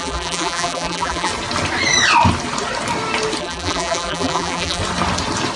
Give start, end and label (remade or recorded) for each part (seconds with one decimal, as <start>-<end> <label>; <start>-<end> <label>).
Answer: 0.0-1.3 remade; 1.3-3.4 recorded; 3.4-4.8 remade; 4.8-5.6 recorded